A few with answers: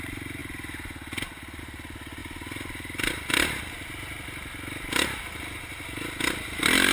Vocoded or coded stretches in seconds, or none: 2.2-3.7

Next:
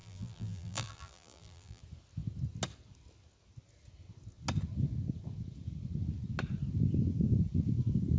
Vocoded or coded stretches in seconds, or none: 0.0-1.8

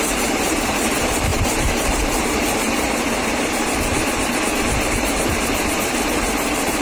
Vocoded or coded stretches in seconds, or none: 0.0-6.8

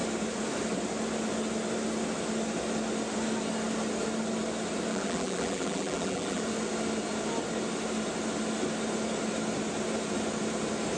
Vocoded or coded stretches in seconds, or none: 4.9-6.4

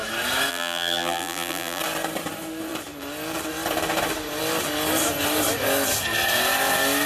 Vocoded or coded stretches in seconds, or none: 0.5-1.8

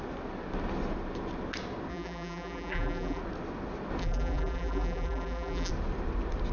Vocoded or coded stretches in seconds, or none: 1.9-3.2; 4.0-5.7

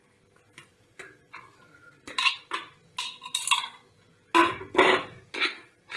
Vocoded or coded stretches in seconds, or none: 0.7-2.5

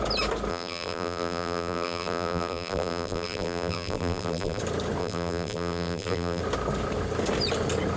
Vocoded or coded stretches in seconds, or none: 0.5-4.6; 5.0-6.4